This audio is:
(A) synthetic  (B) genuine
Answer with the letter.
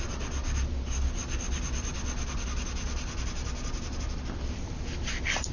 B